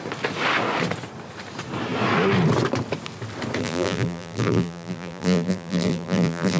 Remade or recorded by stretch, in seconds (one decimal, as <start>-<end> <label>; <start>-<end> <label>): 0.0-3.6 recorded; 3.6-6.6 remade